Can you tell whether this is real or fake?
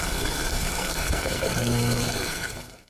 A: fake